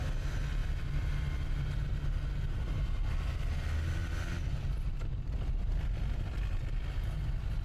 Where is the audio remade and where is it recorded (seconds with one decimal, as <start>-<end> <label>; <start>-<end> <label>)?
0.0-0.6 recorded; 0.6-2.2 remade; 2.2-4.0 recorded; 4.0-5.6 remade; 5.6-7.6 recorded